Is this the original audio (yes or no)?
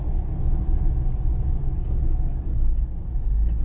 yes